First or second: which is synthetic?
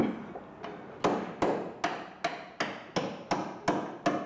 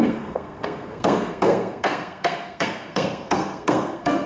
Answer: second